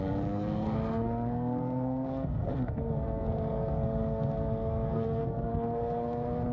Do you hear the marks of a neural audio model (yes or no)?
yes